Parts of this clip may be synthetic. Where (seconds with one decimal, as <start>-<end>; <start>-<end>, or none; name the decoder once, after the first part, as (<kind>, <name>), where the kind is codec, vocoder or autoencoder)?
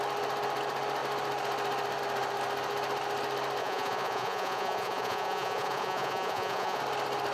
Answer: 3.6-6.8 (vocoder, Vocos)